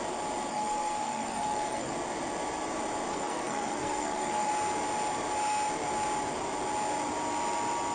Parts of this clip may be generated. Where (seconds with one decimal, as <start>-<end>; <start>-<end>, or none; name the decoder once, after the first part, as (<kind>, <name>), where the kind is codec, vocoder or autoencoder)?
0.5-1.9 (codec, SNAC); 3.1-4.5

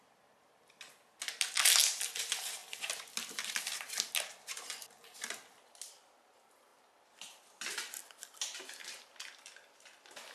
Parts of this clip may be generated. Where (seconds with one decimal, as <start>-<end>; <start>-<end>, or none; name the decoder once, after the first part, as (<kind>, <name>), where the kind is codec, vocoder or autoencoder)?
none

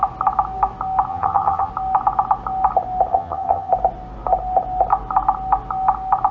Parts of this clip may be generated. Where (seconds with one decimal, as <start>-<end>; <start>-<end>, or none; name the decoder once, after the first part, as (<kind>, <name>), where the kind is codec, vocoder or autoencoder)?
1.1-1.7 (vocoder, HiFi-GAN); 3.1-3.7